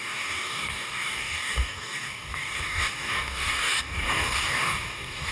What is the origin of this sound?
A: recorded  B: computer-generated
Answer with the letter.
B